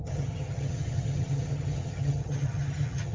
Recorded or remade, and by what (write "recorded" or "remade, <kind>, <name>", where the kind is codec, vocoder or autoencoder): remade, vocoder, HiFi-GAN